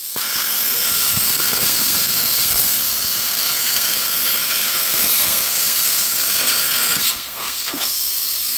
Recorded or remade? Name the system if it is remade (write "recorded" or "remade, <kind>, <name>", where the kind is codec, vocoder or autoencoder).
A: remade, codec, SNAC